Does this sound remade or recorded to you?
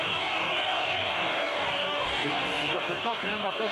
remade